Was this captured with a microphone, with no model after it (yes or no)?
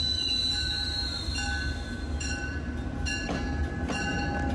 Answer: yes